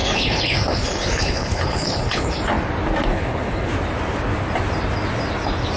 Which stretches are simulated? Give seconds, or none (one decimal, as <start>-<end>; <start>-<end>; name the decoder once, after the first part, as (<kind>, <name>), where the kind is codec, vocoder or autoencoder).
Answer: 0.0-2.4 (codec, HILCodec); 3.1-3.7